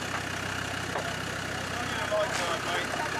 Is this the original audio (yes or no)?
yes